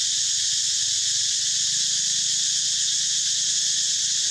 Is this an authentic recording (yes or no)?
yes